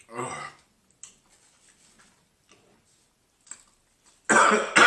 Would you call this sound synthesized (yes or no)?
no